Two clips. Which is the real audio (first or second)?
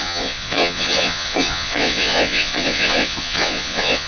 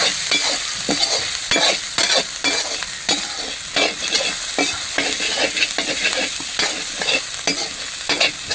second